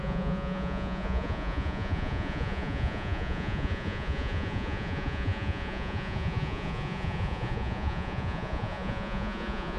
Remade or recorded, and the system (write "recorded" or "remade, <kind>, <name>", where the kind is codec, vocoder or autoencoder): remade, vocoder, Vocos